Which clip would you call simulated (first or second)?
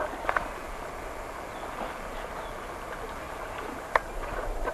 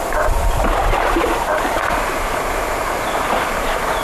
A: second